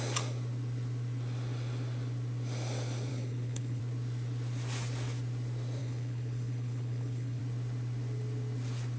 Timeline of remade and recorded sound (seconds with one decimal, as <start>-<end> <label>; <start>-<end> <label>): 0.0-3.1 recorded; 3.1-3.8 remade; 3.8-5.8 recorded; 5.8-7.4 remade; 7.4-9.0 recorded